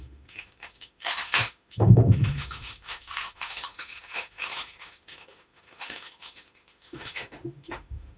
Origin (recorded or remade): remade